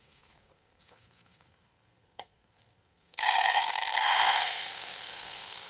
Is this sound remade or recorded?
remade